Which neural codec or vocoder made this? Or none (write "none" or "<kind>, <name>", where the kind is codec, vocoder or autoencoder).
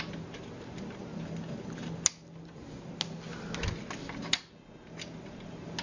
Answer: none